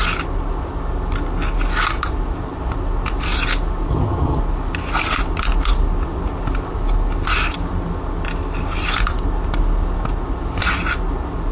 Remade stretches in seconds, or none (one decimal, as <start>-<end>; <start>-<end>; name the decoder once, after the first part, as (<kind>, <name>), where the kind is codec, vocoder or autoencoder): 3.9-4.4 (vocoder, HiFi-GAN)